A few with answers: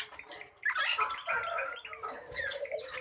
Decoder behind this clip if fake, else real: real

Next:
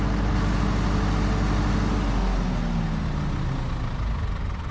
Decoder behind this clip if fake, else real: real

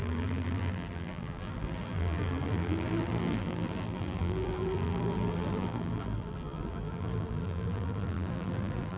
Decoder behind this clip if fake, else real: fake, vocoder, BigVGAN v2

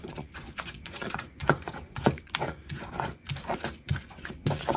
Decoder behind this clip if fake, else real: fake, vocoder, Vocos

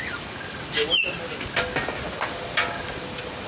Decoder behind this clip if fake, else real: real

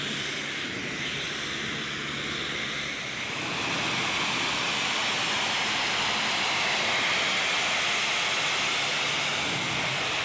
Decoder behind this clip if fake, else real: real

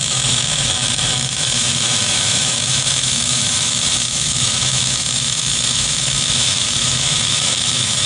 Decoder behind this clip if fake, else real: fake, autoencoder, DAC-VAE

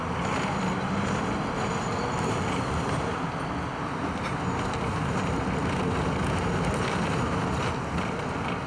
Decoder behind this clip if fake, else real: real